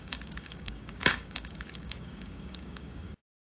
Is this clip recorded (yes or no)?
no